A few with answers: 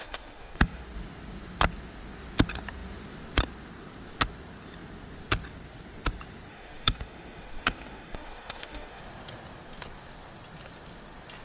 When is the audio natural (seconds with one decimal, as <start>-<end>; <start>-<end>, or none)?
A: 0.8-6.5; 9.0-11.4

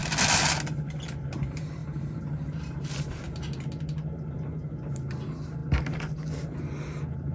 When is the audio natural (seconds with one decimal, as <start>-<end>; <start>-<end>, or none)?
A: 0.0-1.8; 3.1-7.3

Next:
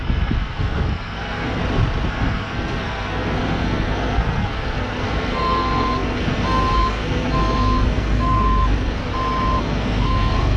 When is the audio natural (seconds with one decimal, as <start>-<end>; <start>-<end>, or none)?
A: 1.6-2.1; 9.0-9.6

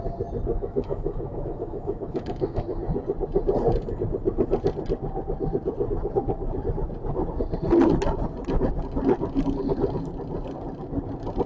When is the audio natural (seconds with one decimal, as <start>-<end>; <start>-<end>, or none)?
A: 0.0-0.5; 2.8-11.5

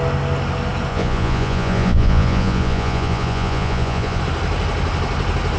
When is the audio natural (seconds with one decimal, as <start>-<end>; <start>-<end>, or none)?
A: 0.0-0.9; 4.2-5.6